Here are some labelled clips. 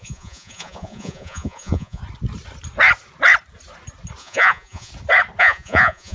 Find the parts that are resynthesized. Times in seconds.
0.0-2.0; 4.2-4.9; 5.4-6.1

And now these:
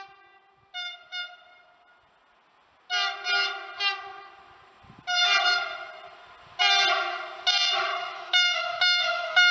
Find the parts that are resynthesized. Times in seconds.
7.9-9.5

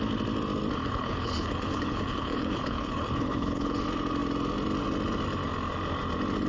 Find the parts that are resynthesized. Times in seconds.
0.8-3.8

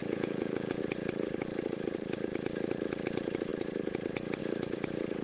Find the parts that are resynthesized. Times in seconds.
0.0-0.8

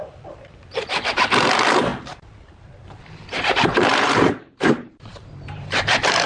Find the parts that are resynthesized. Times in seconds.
3.9-6.3